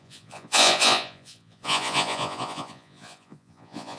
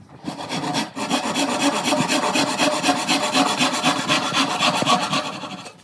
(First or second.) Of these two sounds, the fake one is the first